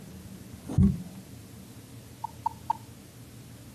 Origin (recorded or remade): recorded